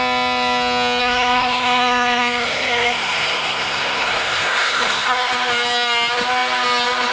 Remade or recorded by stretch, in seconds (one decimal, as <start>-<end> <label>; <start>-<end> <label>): 0.0-1.0 recorded; 1.0-5.3 remade; 5.3-7.1 recorded